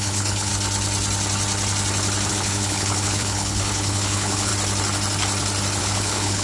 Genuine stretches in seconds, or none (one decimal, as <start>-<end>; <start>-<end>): 0.5-2.3; 4.5-5.8